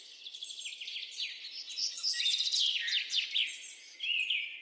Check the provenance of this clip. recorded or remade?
recorded